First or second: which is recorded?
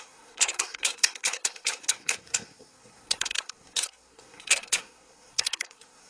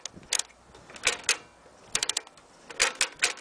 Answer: second